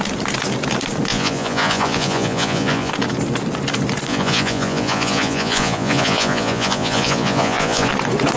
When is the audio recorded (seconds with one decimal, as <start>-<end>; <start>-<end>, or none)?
0.0-1.1; 2.9-4.1; 7.9-8.4